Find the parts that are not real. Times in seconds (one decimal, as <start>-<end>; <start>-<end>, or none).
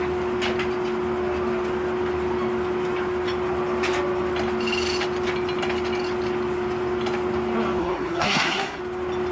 7.8-8.8